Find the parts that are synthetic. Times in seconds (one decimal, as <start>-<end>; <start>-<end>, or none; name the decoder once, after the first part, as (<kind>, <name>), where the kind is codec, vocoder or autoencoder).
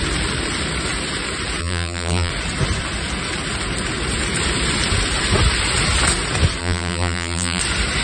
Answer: 1.6-2.3 (vocoder, BigVGAN v2); 6.6-7.6